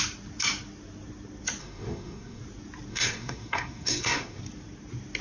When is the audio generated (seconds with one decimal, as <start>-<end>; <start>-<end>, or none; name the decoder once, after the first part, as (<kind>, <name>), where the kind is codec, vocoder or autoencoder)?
1.6-2.4 (codec, SNAC); 2.9-4.4